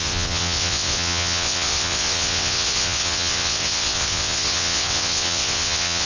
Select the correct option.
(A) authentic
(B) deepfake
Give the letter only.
B